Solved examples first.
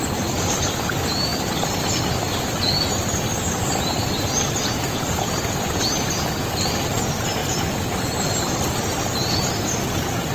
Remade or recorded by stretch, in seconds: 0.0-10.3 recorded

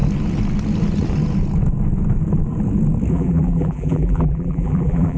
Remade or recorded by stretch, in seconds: 0.0-3.1 recorded; 3.1-5.2 remade

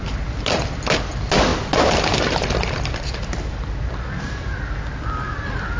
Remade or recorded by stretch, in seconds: 0.0-5.8 recorded

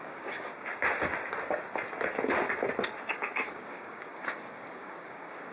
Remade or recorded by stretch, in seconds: 0.0-0.5 remade; 0.5-3.0 recorded; 3.0-5.5 remade

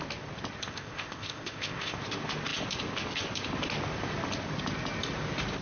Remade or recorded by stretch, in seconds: 0.0-0.6 recorded; 0.6-2.0 remade; 2.0-5.6 recorded

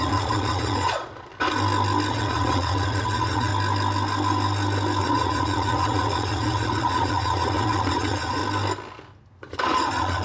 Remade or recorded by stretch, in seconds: 0.0-1.3 remade; 1.3-2.1 recorded; 2.1-3.5 remade; 3.5-5.0 recorded; 5.0-8.4 remade; 8.4-9.3 recorded; 9.3-10.2 remade